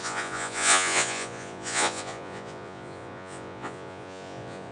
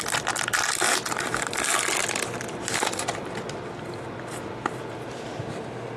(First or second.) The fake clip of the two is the first